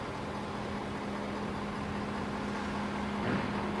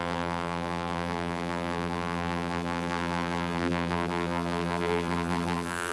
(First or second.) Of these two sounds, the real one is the first